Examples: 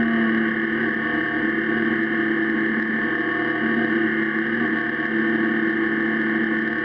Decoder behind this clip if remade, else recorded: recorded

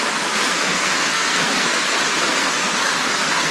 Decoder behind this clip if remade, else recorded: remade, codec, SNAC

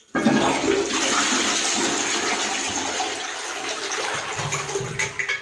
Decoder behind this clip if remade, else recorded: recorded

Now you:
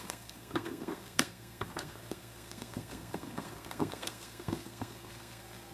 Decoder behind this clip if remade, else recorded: remade, codec, SNAC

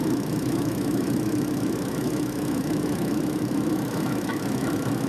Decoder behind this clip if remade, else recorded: remade, autoencoder, DAC-VAE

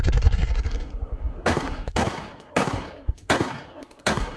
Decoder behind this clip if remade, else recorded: remade, codec, SNAC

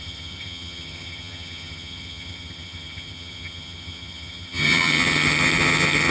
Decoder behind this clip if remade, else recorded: remade, vocoder, HiFi-GAN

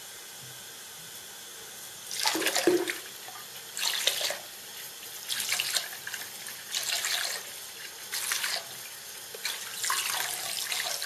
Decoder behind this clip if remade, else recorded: recorded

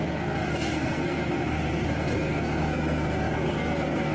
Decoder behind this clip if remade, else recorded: remade, codec, SNAC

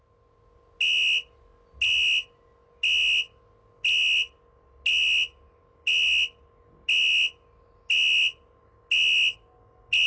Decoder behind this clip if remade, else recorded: recorded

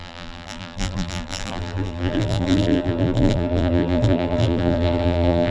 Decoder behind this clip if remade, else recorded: remade, vocoder, BigVGAN v2